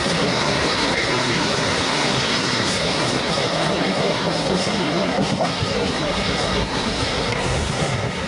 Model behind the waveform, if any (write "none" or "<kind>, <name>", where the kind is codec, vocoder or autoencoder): codec, SNAC